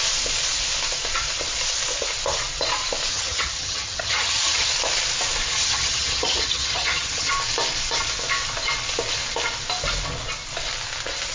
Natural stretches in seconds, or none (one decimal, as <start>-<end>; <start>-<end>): 0.0-3.1; 4.7-5.5; 7.3-11.3